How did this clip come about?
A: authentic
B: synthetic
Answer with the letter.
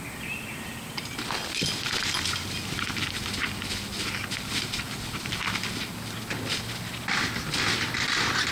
A